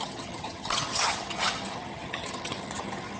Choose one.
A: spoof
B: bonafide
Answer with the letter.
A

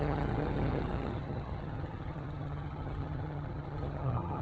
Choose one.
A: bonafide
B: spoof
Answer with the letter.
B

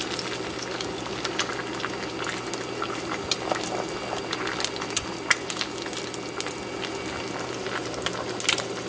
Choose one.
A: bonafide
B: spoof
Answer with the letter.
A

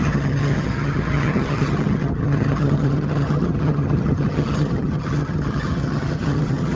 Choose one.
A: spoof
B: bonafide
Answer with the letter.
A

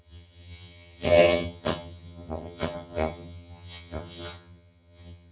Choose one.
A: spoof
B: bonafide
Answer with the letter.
A